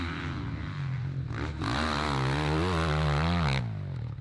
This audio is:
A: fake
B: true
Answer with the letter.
B